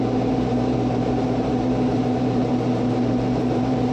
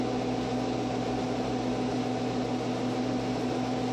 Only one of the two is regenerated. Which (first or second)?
first